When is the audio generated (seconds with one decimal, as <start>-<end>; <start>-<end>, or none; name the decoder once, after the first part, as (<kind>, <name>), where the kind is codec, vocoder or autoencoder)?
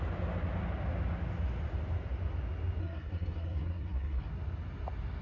2.8-4.3 (codec, SNAC)